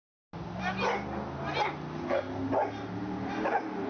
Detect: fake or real real